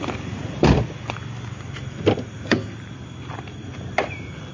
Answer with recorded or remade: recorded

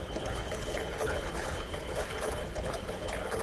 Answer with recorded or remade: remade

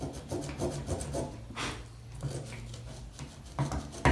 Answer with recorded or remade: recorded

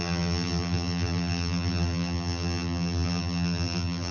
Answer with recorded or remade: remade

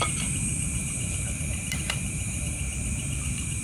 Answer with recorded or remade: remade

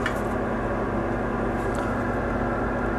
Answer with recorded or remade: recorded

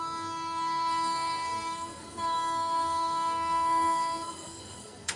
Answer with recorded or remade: remade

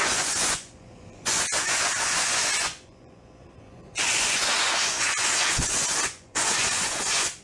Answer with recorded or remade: remade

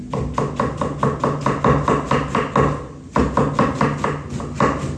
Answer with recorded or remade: recorded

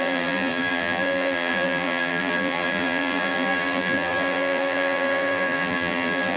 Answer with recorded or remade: remade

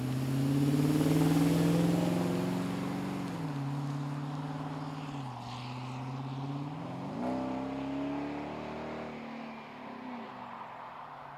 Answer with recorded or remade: recorded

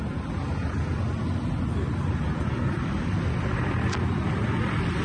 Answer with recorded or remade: recorded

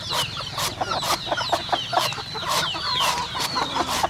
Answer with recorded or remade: recorded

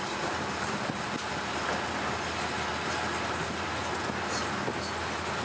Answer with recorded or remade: recorded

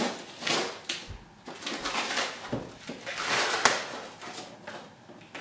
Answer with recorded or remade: recorded